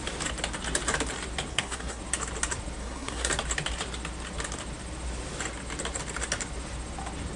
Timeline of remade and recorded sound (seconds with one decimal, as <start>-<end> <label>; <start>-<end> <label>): 0.0-1.5 recorded; 1.5-2.0 remade; 2.0-2.8 recorded; 2.8-3.3 remade; 3.3-7.4 recorded